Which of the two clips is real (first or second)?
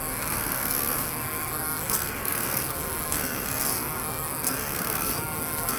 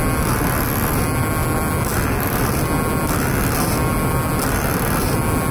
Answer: second